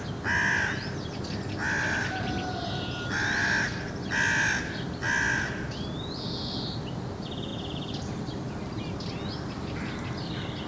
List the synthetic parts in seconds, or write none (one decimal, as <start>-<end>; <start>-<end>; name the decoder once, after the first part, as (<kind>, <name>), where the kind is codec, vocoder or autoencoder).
none